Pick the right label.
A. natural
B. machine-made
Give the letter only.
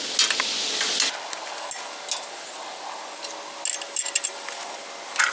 A